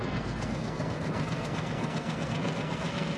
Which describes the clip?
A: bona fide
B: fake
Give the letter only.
B